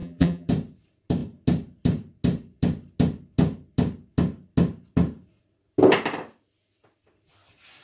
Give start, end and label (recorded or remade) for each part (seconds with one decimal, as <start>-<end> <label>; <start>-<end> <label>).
0.0-0.5 remade; 0.5-7.8 recorded